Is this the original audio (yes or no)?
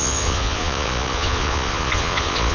no